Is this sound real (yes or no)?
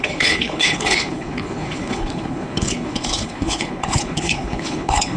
no